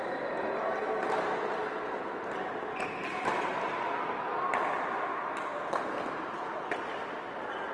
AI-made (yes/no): no